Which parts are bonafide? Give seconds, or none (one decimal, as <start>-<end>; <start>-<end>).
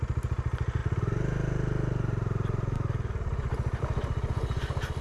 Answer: 0.0-5.0